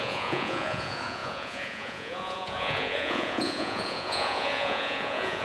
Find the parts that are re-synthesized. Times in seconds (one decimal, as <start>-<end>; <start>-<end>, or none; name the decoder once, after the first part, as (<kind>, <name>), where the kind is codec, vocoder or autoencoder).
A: 0.0-5.4 (vocoder, Vocos)

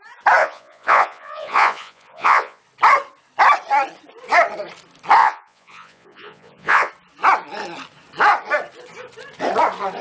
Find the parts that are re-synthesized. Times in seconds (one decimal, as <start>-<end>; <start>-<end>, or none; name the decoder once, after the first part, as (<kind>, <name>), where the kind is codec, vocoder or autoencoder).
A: 0.4-2.6 (vocoder, Vocos); 5.2-6.9

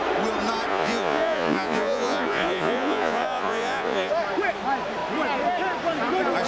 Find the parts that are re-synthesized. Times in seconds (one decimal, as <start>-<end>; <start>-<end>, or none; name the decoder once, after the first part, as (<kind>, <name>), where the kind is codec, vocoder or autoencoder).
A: 0.7-4.1 (vocoder, Vocos)

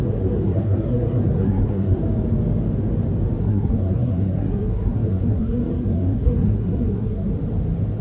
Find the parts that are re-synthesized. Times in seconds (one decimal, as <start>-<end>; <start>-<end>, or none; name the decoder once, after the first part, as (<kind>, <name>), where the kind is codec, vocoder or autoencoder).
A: 0.0-2.0 (codec, SNAC); 3.4-7.3